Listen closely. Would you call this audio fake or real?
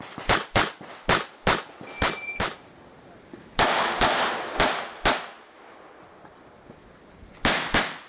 real